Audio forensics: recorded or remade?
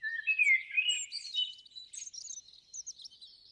recorded